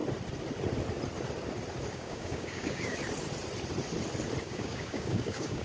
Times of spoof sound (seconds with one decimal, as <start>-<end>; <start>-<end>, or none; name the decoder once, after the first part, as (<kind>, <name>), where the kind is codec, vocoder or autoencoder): 1.9-3.0 (codec, DAC); 4.4-5.6